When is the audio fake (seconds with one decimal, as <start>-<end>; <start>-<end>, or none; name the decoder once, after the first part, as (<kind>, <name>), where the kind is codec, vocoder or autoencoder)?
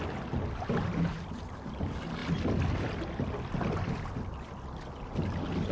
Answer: none